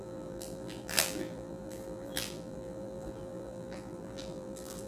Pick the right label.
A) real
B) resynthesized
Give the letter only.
B